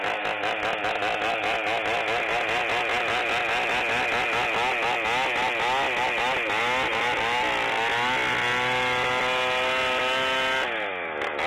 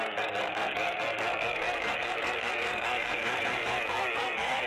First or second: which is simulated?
second